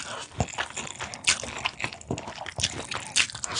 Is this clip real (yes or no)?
yes